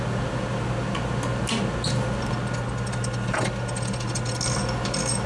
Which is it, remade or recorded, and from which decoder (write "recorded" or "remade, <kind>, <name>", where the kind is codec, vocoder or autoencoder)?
recorded